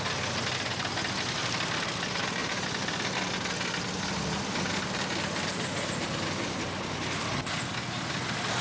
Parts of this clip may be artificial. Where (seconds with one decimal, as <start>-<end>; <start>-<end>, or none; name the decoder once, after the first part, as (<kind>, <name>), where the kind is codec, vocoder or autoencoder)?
none